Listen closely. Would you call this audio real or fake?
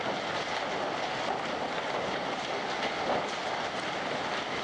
real